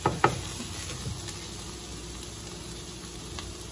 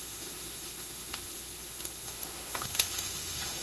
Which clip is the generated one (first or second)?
second